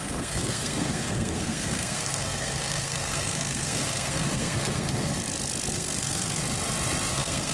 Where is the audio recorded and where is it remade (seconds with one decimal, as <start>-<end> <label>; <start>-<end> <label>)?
0.0-5.1 remade; 5.1-5.7 recorded; 5.7-6.4 remade; 6.4-7.1 recorded; 7.1-7.5 remade